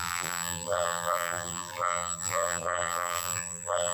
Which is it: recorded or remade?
remade